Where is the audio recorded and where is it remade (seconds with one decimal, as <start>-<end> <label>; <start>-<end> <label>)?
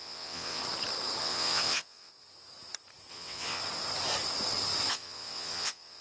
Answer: 0.0-0.6 remade; 0.6-1.2 recorded; 1.2-2.1 remade; 2.1-3.1 recorded; 3.1-3.6 remade; 3.6-4.9 recorded; 4.9-6.0 remade